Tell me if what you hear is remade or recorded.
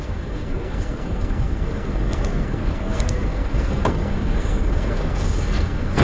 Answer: remade